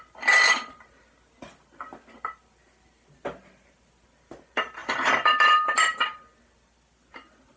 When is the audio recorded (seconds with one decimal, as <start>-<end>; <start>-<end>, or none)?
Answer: 0.0-7.6